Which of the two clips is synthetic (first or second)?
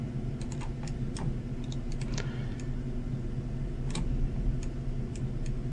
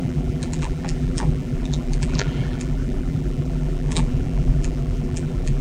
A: second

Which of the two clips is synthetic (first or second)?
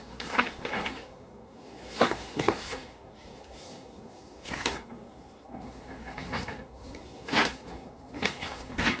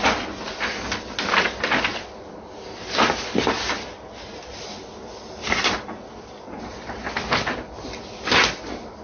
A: first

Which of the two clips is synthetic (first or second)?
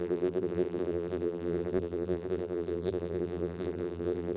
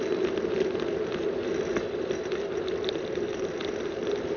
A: first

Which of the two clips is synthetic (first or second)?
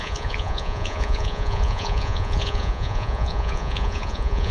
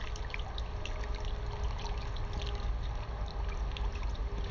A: first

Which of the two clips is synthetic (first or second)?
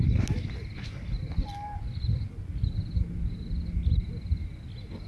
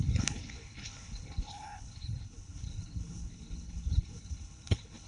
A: second